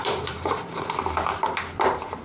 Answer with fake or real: fake